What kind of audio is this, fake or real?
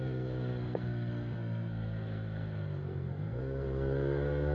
fake